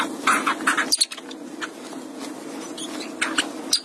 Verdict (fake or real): real